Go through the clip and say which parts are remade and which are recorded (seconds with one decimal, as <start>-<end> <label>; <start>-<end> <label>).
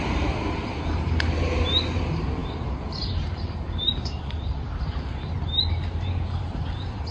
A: 0.0-7.1 remade